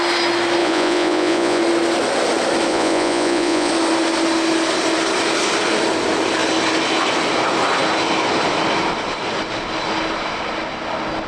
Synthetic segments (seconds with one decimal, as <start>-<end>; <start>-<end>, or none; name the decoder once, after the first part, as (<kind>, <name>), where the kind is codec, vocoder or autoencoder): 0.6-1.6 (vocoder, Vocos); 2.7-3.7